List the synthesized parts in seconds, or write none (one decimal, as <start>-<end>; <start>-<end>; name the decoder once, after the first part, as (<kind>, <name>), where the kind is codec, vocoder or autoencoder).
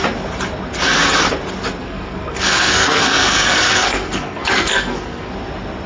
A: 1.8-5.3 (codec, SNAC)